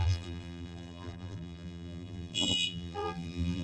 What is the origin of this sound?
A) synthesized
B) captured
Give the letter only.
A